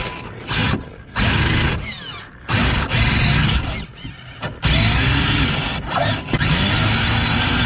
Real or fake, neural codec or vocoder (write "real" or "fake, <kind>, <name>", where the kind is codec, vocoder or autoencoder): real